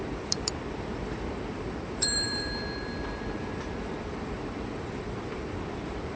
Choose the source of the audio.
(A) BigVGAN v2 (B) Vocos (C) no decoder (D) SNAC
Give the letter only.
A